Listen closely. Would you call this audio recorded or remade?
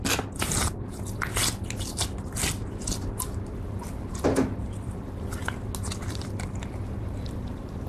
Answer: recorded